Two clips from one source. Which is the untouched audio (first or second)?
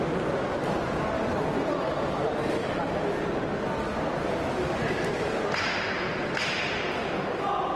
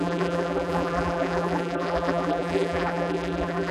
first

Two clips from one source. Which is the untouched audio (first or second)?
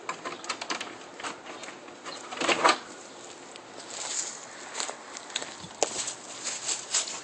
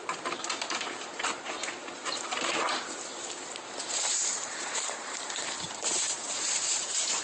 first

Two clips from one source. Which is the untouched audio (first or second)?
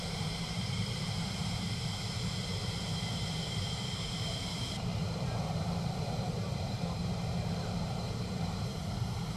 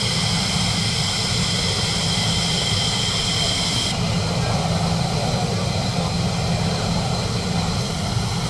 second